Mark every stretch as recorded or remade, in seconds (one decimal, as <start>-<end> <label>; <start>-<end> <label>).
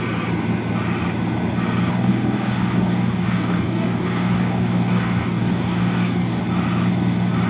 0.0-1.9 recorded; 1.9-6.4 remade; 6.4-7.5 recorded